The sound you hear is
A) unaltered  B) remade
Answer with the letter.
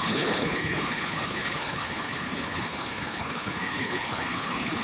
B